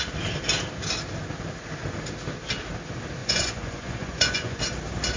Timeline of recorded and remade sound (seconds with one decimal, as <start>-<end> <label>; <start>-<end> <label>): 0.0-3.2 recorded; 3.2-4.6 remade; 4.6-5.2 recorded